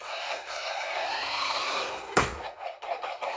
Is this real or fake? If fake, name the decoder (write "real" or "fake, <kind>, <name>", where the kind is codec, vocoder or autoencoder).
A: fake, codec, SNAC